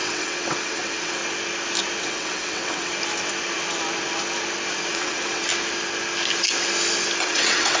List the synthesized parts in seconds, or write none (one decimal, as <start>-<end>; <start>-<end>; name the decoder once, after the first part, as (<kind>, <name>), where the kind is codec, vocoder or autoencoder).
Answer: 0.0-1.2 (vocoder, WaveNeXt); 2.0-2.9; 4.9-5.4; 7.2-7.8